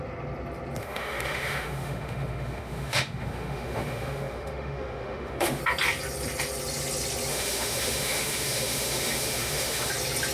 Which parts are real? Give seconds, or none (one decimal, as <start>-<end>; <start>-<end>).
0.0-0.8; 5.6-7.3; 9.9-10.3